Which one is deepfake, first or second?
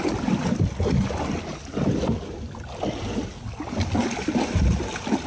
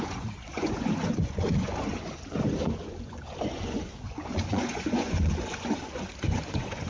second